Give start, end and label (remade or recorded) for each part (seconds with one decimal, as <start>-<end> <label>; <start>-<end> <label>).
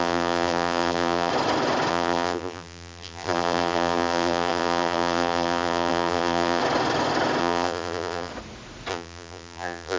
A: 0.0-1.3 remade; 1.3-1.9 recorded; 1.9-6.6 remade; 6.6-7.4 recorded; 7.4-8.3 remade; 8.3-8.9 recorded; 8.9-10.0 remade